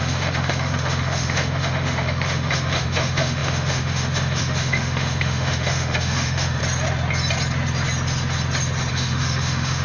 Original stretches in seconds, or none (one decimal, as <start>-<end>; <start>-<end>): 6.6-8.9